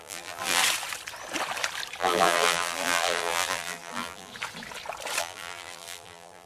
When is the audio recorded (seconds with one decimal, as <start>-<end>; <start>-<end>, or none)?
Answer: 0.6-2.0; 4.3-5.2